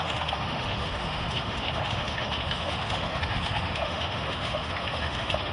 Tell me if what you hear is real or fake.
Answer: fake